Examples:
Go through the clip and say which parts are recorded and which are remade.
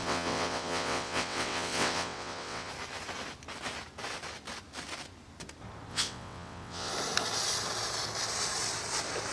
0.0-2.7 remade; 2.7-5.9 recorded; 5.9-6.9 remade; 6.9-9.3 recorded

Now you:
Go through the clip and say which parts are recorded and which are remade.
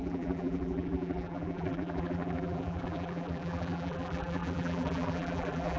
0.0-5.8 remade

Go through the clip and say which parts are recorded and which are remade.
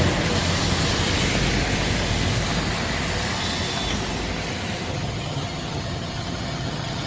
0.0-4.9 recorded; 4.9-7.1 remade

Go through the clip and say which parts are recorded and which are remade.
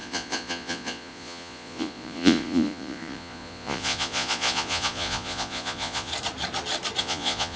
0.0-6.1 remade; 6.1-7.0 recorded; 7.0-7.6 remade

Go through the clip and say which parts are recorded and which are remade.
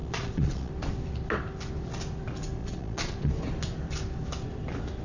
0.0-0.7 remade; 0.7-2.6 recorded; 2.6-3.3 remade; 3.3-5.0 recorded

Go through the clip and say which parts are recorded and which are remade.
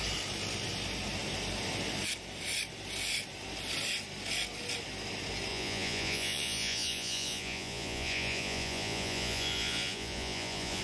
0.0-5.5 recorded; 5.5-10.8 remade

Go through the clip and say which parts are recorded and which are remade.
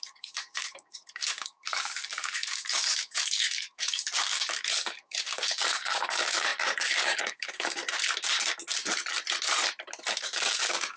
0.0-7.8 remade; 7.8-10.2 recorded; 10.2-11.0 remade